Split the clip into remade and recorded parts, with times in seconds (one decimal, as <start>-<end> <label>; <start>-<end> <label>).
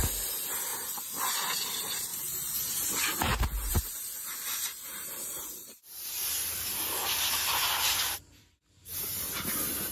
0.0-0.7 recorded; 0.7-1.3 remade; 1.3-2.1 recorded; 2.1-2.9 remade; 2.9-3.7 recorded; 3.7-8.2 remade; 8.2-9.9 recorded